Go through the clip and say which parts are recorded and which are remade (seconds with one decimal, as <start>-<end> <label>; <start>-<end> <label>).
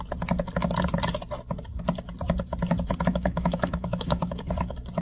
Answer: 0.0-3.1 recorded; 3.1-4.4 remade; 4.4-5.0 recorded